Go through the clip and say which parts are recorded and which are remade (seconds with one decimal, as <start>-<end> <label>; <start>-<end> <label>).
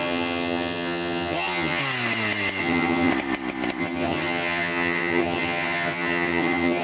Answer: 0.0-1.8 remade; 1.8-2.6 recorded; 2.6-3.1 remade; 3.1-3.8 recorded; 3.8-6.8 remade